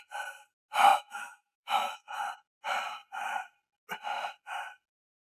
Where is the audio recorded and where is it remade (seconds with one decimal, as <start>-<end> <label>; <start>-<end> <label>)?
0.0-0.9 recorded; 0.9-2.2 remade; 2.2-5.3 recorded